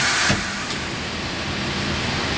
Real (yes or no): yes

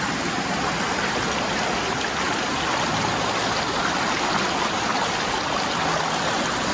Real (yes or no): yes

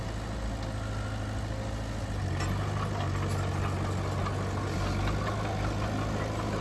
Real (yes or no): yes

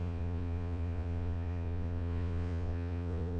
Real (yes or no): no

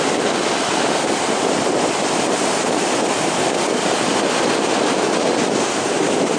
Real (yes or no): yes